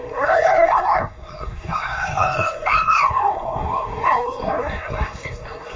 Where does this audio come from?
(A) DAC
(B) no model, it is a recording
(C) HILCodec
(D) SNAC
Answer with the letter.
D